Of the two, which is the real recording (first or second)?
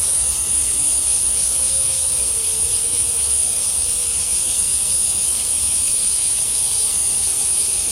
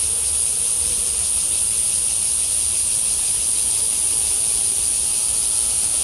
second